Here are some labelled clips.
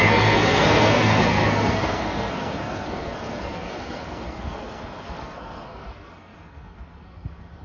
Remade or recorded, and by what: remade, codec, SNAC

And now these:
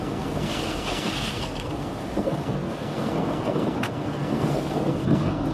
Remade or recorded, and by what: remade, codec, SNAC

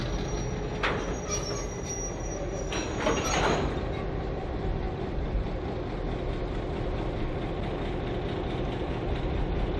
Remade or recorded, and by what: recorded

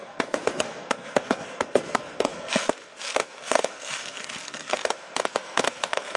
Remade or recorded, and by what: remade, codec, SNAC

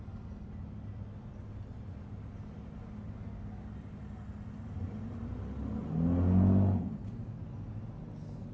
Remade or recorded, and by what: recorded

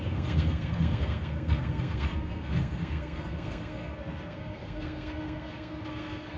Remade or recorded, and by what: remade, codec, SNAC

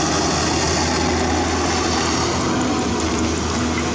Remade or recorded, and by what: recorded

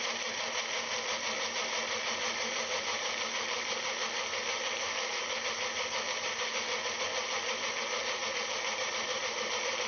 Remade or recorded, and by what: recorded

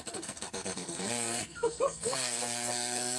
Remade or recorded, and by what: remade, codec, SNAC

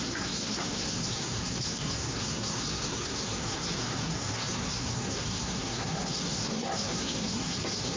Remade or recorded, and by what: remade, codec, SNAC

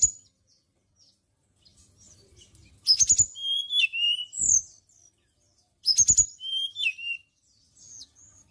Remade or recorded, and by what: recorded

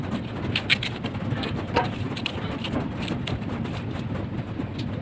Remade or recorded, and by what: recorded